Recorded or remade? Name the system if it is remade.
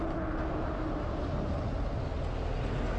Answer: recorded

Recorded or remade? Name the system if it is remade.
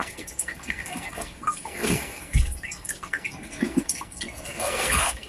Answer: remade, codec, SNAC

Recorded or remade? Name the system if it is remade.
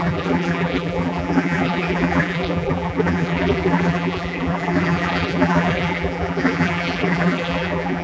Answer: remade, vocoder, BigVGAN v2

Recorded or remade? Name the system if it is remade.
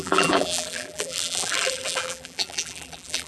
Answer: remade, vocoder, BigVGAN v2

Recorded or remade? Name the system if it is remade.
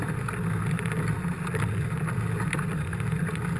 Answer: recorded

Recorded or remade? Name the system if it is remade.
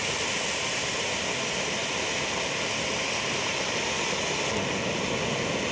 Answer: recorded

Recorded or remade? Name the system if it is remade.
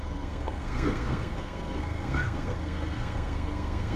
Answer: remade, codec, SNAC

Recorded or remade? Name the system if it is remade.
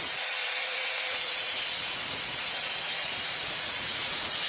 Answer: remade, vocoder, Vocos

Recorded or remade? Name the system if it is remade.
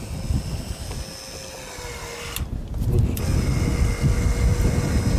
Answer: recorded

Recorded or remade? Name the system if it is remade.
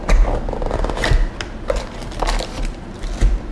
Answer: recorded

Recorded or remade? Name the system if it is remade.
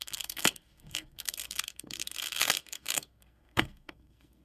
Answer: remade, codec, SNAC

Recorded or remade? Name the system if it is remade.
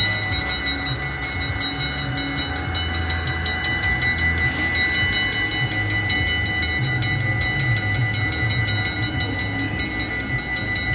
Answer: recorded